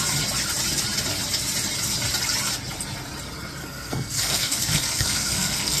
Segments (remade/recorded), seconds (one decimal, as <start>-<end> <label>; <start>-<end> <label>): 0.0-3.6 recorded; 3.6-5.8 remade